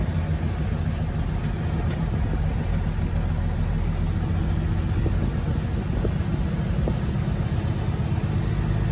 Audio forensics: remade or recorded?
recorded